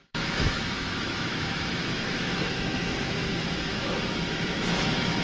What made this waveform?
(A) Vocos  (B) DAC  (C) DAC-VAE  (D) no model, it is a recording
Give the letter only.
C